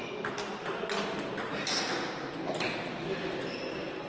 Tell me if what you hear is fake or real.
real